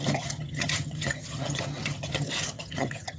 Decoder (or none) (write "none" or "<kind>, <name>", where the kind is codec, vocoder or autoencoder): vocoder, HiFi-GAN